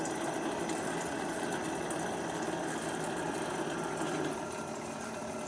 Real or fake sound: real